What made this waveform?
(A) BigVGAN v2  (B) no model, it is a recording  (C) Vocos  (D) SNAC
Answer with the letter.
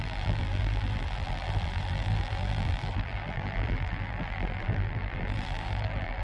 A